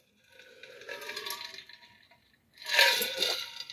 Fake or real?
real